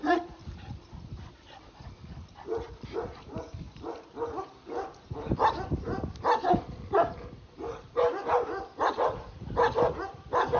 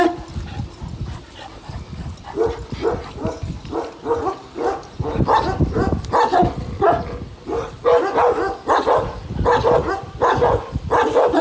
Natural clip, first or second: second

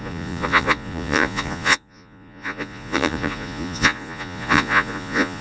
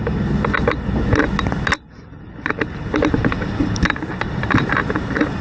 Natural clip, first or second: second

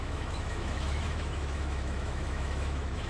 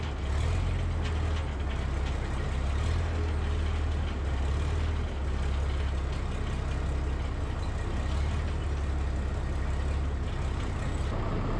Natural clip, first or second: second